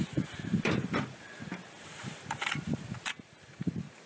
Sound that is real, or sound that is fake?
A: fake